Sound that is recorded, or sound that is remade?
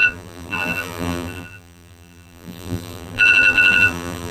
remade